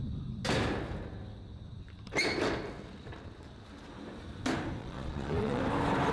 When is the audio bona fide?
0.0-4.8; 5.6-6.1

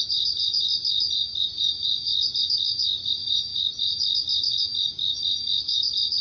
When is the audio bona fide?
0.7-1.4; 2.1-3.1; 3.5-5.6